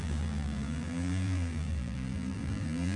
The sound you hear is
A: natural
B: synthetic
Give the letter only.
B